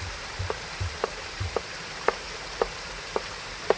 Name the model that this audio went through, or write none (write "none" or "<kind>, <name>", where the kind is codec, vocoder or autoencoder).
vocoder, BigVGAN v2